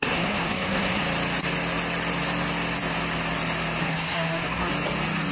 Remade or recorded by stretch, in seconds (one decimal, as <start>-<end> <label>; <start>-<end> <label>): 0.0-1.0 remade; 1.0-3.8 recorded; 3.8-4.7 remade; 4.7-5.3 recorded